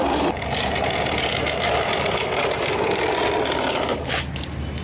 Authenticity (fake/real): real